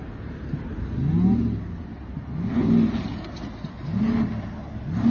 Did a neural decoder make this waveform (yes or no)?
no